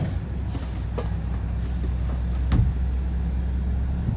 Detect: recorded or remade recorded